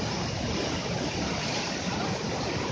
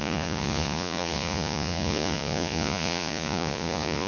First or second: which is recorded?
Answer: first